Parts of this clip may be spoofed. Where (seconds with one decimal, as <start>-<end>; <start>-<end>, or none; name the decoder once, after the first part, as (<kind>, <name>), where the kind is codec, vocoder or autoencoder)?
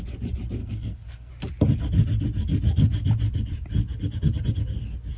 0.6-1.3 (codec, SNAC)